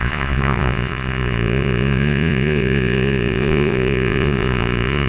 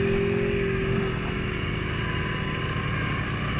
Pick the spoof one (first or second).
first